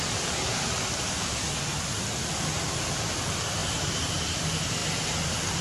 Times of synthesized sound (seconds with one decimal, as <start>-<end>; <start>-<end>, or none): none